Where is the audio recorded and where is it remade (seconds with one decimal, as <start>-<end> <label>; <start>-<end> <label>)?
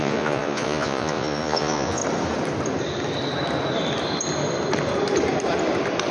0.0-2.0 remade; 2.0-6.1 recorded